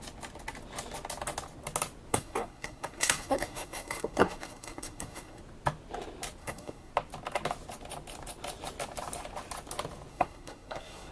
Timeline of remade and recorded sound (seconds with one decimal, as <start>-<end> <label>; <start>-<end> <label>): 0.0-2.1 recorded; 2.1-5.4 remade; 5.4-6.4 recorded; 6.4-6.9 remade; 6.9-10.1 recorded; 10.1-11.1 remade